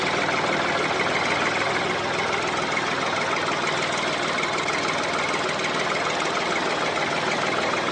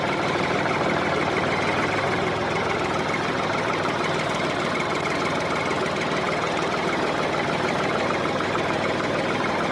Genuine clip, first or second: first